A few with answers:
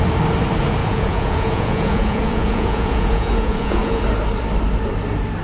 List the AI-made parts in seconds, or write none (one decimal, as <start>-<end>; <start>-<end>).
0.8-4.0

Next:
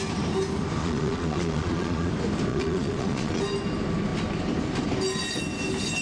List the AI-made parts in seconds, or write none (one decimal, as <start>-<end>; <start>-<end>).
0.8-2.1; 2.5-3.4

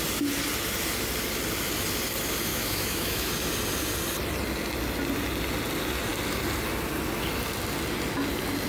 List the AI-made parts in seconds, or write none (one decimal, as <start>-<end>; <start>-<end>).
2.5-3.3

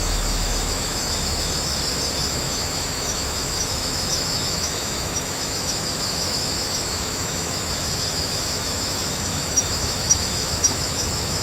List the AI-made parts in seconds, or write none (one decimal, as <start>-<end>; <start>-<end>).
0.0-1.7; 2.3-11.4

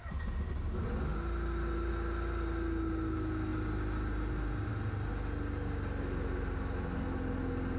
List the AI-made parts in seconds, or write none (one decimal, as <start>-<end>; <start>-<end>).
1.1-1.9

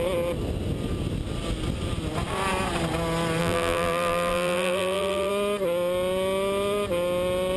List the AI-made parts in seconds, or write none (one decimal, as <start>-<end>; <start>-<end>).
3.4-5.3

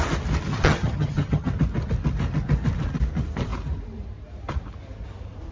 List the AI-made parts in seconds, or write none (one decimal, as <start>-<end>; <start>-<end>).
0.5-1.5